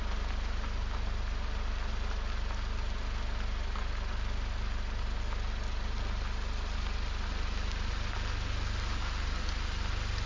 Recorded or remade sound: recorded